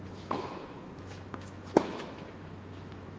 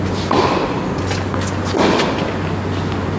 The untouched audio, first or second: second